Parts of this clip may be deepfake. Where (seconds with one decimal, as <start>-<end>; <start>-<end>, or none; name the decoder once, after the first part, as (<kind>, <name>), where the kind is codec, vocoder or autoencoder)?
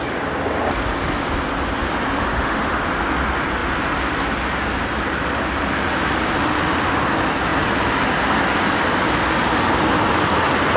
2.2-2.8 (autoencoder, DAC-VAE)